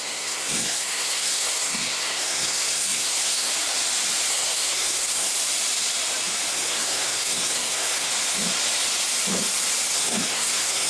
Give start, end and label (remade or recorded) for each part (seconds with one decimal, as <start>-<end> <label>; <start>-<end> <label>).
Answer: 0.0-3.5 remade; 3.5-4.3 recorded; 4.3-5.3 remade; 5.3-6.5 recorded; 6.5-8.1 remade; 8.1-9.9 recorded; 9.9-10.9 remade